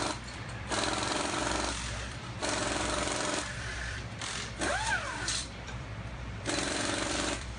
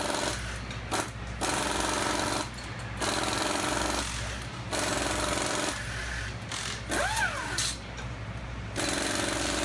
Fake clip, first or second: first